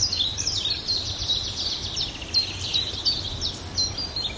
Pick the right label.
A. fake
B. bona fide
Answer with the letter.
B